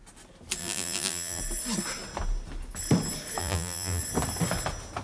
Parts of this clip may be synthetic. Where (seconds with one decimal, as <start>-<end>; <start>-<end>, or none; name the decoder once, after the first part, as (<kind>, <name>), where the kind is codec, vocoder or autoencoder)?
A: 0.6-1.4 (vocoder, BigVGAN v2); 3.4-4.0